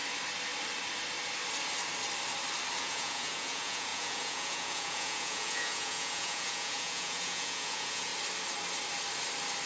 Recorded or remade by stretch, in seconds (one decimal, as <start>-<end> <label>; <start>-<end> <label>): 0.0-2.8 recorded; 2.8-8.1 remade; 8.1-9.7 recorded